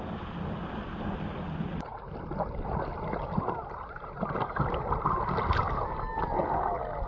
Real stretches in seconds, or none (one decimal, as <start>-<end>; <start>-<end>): 0.0-7.1